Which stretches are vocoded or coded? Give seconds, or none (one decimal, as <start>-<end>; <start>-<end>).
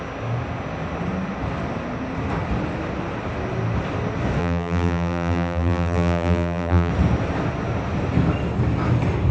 4.4-6.9